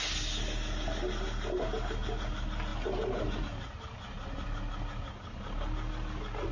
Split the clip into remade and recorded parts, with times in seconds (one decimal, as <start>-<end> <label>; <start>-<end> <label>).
0.0-6.5 recorded